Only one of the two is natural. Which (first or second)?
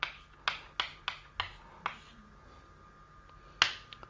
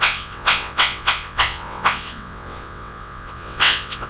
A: first